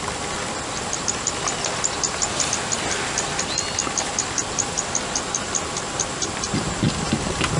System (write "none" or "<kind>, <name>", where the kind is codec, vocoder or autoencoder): none